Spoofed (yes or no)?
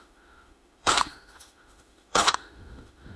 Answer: yes